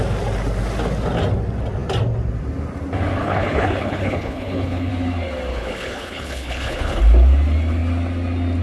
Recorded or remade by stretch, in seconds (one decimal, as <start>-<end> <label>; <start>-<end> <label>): 0.0-3.2 recorded; 3.2-4.9 remade; 4.9-5.5 recorded; 5.5-7.0 remade; 7.0-8.6 recorded